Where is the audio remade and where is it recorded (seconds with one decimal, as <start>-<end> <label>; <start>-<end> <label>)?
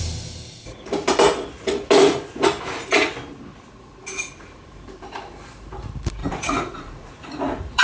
0.0-6.2 recorded; 6.2-7.8 remade